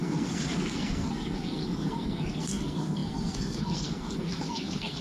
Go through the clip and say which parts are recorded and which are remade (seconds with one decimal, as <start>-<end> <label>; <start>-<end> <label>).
0.0-5.0 remade